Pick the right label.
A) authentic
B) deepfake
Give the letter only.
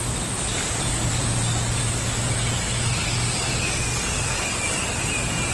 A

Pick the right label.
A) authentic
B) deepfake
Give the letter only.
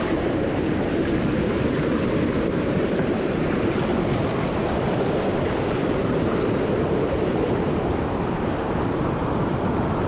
B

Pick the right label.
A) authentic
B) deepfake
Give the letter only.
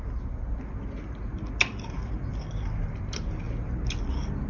A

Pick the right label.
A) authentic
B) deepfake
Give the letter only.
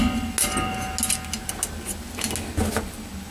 A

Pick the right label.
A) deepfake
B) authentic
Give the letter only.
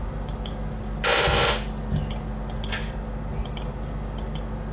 B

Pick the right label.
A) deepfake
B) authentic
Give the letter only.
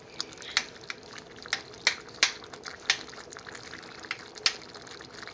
B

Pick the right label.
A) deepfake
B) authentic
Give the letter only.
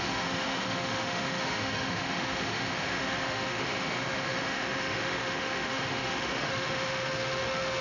A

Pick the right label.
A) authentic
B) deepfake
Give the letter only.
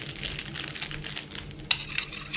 A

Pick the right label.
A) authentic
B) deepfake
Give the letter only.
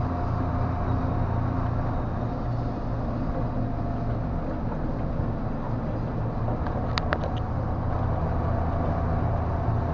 A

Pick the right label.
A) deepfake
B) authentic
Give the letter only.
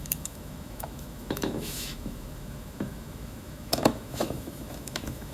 A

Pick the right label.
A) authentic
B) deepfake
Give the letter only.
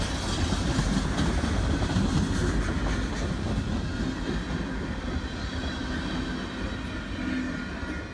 A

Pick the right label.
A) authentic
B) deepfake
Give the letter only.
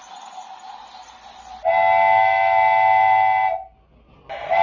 A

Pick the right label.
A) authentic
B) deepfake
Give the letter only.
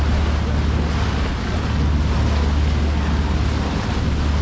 A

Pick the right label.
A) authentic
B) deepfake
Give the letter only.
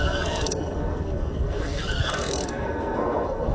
B